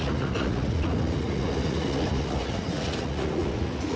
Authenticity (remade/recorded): remade